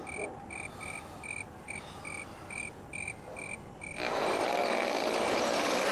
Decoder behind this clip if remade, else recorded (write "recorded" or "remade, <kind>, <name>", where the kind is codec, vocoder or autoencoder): recorded